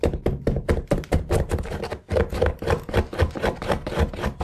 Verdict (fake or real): real